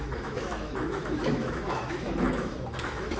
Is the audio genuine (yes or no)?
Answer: no